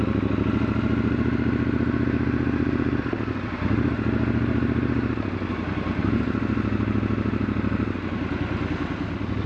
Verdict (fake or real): real